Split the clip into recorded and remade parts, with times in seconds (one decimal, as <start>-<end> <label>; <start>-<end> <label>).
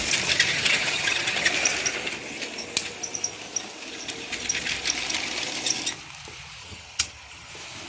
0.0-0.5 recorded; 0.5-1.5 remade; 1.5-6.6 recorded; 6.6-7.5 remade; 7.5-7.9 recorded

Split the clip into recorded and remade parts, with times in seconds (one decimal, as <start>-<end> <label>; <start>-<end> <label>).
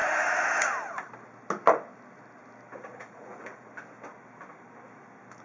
0.0-2.9 recorded; 2.9-3.7 remade; 3.7-5.4 recorded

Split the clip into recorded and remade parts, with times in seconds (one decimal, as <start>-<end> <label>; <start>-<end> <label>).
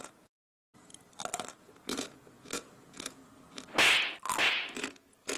0.0-0.9 remade; 0.9-1.6 recorded; 1.6-3.2 remade; 3.2-4.5 recorded; 4.5-5.4 remade